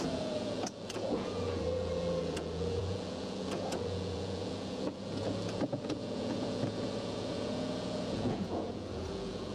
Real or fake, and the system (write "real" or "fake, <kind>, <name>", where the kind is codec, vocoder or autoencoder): fake, vocoder, Vocos